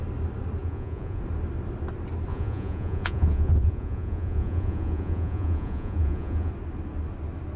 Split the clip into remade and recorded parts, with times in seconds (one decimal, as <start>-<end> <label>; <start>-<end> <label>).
0.0-0.6 recorded; 0.6-1.2 remade; 1.2-2.3 recorded; 2.3-6.5 remade; 6.5-7.6 recorded